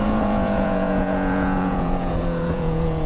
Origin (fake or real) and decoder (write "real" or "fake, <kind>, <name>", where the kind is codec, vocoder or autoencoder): fake, vocoder, Vocos